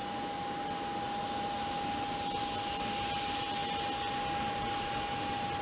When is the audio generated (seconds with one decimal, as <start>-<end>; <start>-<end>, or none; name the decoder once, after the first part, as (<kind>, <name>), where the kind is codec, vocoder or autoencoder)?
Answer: none